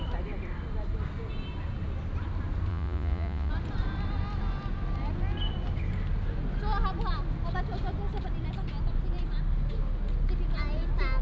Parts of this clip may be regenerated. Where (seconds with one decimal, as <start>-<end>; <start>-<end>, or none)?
2.7-3.5